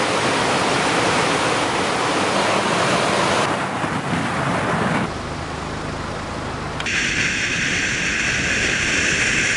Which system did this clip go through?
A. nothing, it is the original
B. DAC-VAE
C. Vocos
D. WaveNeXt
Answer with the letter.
A